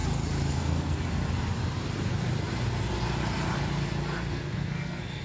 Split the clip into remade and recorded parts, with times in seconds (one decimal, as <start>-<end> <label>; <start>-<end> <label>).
0.0-0.5 recorded; 0.5-1.2 remade; 1.2-4.3 recorded; 4.3-5.2 remade